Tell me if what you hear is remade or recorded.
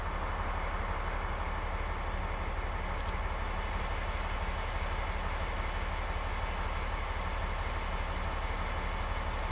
recorded